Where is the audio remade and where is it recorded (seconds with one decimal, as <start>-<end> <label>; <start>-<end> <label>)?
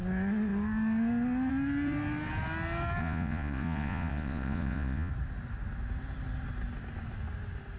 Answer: 0.0-3.0 recorded; 3.0-5.1 remade; 5.1-7.8 recorded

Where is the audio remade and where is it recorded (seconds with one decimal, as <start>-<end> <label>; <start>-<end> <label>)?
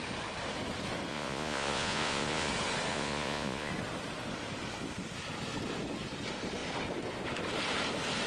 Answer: 0.0-1.1 recorded; 1.1-2.5 remade; 2.5-2.9 recorded; 2.9-3.7 remade; 3.7-8.3 recorded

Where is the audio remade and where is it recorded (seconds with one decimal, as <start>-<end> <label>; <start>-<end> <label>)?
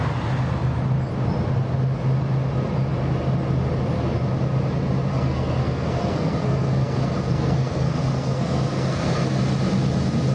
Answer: 0.0-5.1 recorded; 5.1-9.4 remade; 9.4-10.3 recorded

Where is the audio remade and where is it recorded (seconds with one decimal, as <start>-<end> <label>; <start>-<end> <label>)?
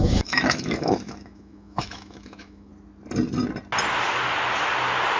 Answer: 0.0-2.7 remade; 2.7-5.2 recorded